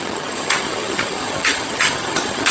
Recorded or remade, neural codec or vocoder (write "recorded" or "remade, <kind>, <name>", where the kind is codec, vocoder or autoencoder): remade, vocoder, HiFi-GAN